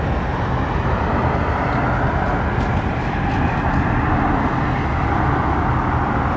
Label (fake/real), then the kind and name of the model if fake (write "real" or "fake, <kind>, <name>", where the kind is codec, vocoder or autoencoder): real